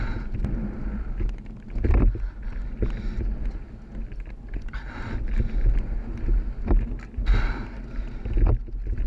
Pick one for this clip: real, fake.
real